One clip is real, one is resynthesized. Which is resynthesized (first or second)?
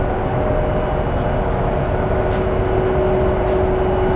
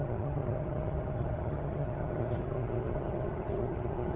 second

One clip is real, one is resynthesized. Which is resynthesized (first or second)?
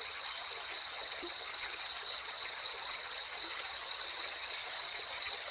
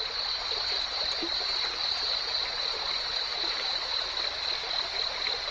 first